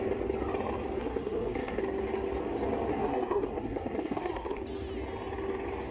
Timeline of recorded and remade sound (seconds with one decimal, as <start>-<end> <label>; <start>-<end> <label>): 0.0-1.0 recorded; 1.0-1.8 remade; 1.8-2.9 recorded; 2.9-4.6 remade; 4.6-5.9 recorded